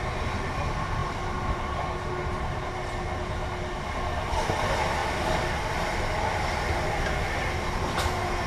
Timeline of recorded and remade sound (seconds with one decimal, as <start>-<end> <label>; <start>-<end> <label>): 0.0-8.5 recorded